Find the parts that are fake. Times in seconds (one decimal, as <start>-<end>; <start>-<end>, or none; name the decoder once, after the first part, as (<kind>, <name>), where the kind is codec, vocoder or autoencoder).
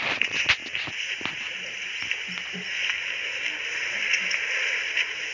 none